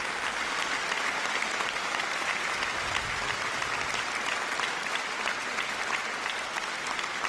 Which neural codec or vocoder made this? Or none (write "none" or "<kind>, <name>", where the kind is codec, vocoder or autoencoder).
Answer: none